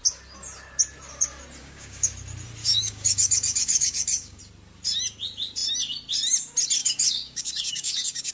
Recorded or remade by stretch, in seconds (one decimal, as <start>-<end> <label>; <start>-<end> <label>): 0.0-1.6 recorded; 1.6-2.1 remade; 2.1-2.6 recorded; 2.6-4.4 remade; 4.4-6.8 recorded; 6.8-8.3 remade